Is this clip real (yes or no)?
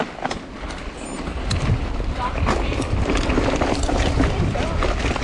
yes